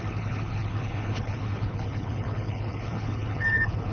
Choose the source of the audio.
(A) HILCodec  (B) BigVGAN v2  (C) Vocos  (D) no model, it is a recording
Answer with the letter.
A